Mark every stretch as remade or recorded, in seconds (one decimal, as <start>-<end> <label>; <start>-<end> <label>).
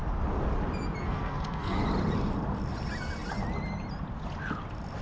0.0-1.0 recorded; 1.0-1.8 remade; 1.8-5.0 recorded